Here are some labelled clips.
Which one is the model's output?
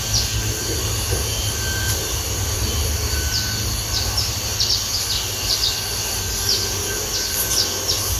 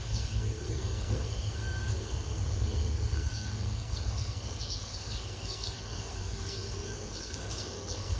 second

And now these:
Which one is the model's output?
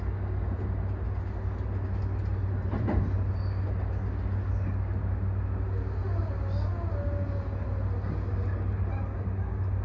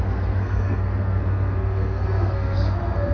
second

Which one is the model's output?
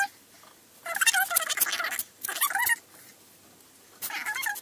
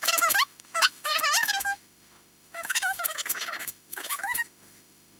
second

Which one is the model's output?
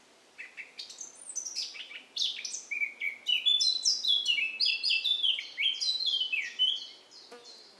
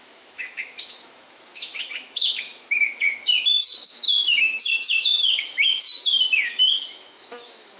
second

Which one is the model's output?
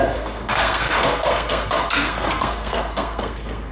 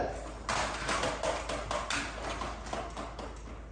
first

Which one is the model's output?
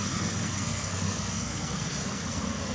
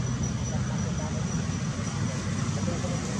first